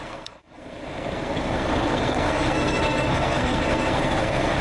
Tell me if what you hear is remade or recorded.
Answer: remade